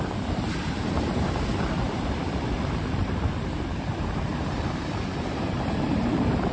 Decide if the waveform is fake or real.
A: fake